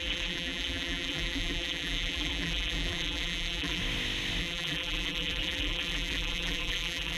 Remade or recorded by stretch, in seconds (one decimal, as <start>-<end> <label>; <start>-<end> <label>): 0.0-3.8 remade; 3.8-4.4 recorded; 4.4-7.2 remade